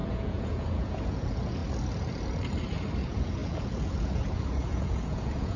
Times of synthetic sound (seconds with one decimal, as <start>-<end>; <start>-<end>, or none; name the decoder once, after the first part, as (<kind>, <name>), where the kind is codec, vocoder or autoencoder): 0.0-1.6 (vocoder, Vocos); 3.0-5.6